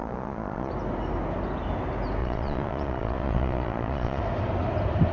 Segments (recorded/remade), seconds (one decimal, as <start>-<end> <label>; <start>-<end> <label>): 0.0-0.7 remade; 0.7-2.2 recorded; 2.2-4.2 remade; 4.2-5.1 recorded